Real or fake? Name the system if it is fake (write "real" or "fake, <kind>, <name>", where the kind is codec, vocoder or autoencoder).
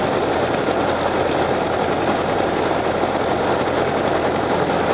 real